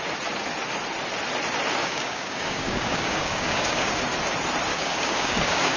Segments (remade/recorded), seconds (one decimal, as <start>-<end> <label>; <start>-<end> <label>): 0.0-1.8 recorded; 1.8-4.0 remade; 4.0-4.7 recorded; 4.7-5.8 remade